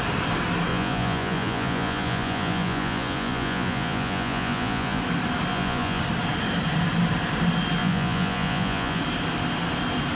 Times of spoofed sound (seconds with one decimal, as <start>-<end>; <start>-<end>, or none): 0.7-5.0; 5.5-6.0; 7.8-9.0